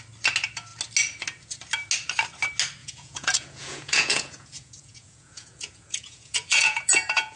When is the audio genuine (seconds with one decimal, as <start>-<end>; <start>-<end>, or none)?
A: 0.0-2.8